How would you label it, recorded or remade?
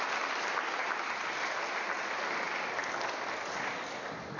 recorded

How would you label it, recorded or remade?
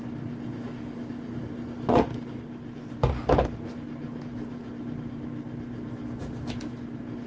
recorded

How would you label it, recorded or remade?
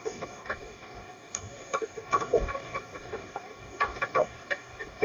remade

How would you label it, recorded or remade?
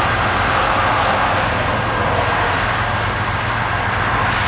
recorded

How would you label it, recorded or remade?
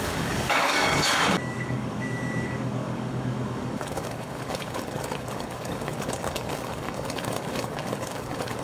remade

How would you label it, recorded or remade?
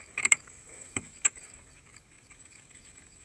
remade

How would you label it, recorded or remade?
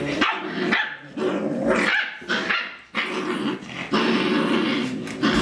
recorded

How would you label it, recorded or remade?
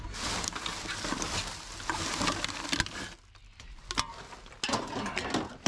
recorded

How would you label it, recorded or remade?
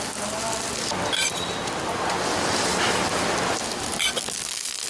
recorded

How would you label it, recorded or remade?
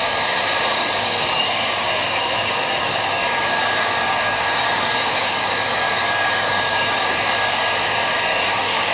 remade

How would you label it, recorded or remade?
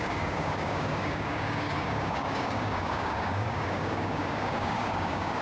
remade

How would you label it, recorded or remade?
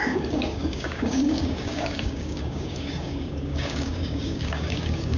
remade